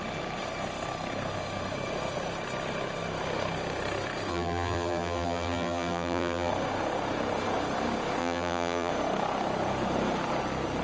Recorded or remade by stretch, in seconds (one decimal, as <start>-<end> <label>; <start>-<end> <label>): 0.0-4.3 recorded; 4.3-6.5 remade; 6.5-8.2 recorded; 8.2-8.9 remade; 8.9-10.8 recorded